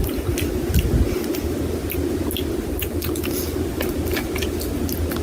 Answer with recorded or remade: recorded